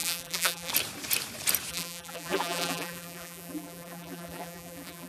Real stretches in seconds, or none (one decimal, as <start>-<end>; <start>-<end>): 0.7-1.7